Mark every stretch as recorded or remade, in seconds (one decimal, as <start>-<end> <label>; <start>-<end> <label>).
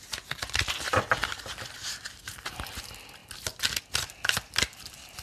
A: 0.0-5.2 recorded